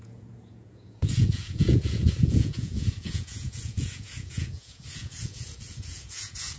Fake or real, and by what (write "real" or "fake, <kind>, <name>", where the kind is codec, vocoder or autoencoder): fake, vocoder, Vocos